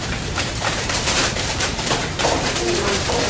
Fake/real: fake